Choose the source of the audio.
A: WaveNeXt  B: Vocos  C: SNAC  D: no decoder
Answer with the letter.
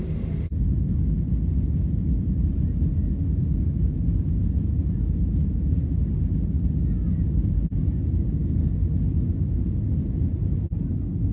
D